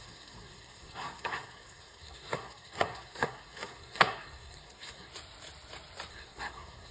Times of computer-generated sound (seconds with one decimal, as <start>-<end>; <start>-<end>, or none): 0.0-5.1; 6.1-6.9